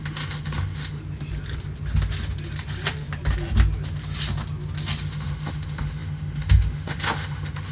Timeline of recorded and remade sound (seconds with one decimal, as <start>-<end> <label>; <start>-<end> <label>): 0.0-1.0 remade; 1.0-5.0 recorded; 5.0-7.7 remade